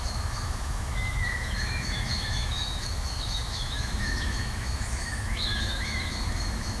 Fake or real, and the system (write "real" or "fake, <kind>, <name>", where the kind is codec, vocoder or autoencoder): fake, autoencoder, DAC-VAE